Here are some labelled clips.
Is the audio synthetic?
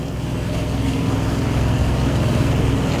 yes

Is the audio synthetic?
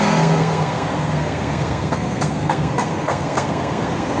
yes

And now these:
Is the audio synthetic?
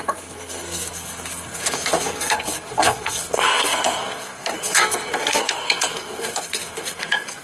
yes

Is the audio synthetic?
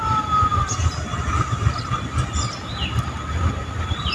no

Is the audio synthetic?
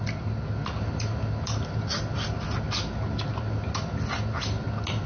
no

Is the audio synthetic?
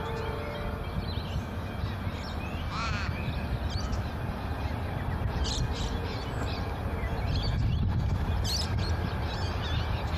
no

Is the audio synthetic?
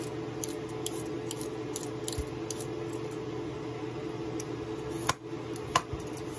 no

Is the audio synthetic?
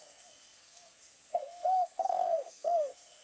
yes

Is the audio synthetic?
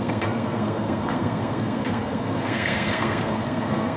yes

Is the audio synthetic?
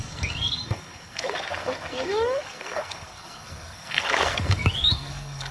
yes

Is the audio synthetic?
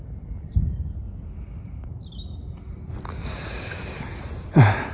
no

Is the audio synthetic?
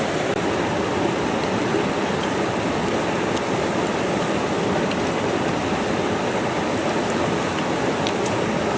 no